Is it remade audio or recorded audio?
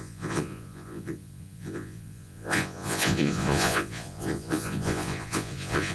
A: remade